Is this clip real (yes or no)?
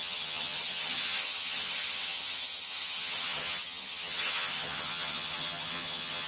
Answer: no